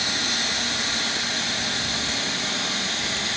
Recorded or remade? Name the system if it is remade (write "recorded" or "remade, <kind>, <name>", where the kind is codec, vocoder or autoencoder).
recorded